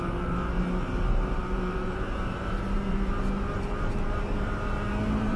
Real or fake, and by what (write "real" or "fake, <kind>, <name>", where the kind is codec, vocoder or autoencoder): fake, vocoder, BigVGAN v2